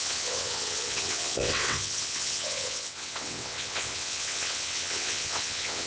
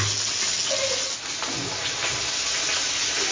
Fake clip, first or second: first